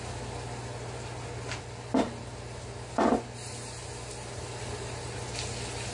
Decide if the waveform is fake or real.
real